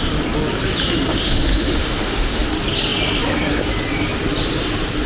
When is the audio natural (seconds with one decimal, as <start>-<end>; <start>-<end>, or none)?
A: 0.0-1.1; 2.5-5.1